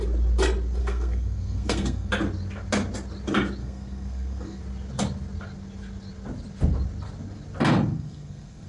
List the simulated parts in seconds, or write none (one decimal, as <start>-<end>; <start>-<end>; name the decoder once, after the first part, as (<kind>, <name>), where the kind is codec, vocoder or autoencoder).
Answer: 0.8-2.1 (codec, SNAC); 3.6-4.6; 7.9-8.7